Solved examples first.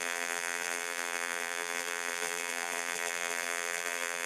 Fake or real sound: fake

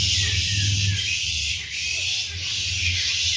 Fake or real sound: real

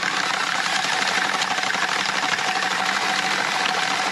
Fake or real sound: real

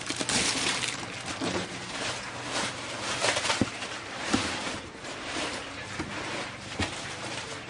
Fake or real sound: fake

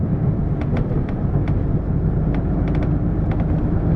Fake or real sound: real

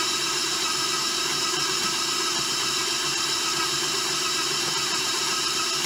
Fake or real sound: fake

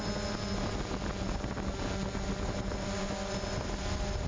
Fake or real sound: real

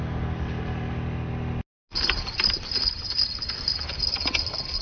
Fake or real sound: real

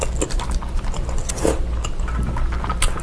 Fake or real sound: real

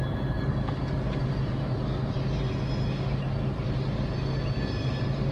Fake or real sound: real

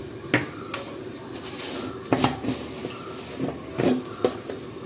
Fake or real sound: real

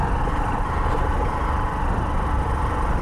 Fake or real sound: real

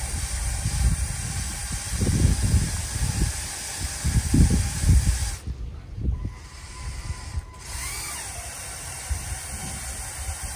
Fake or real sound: real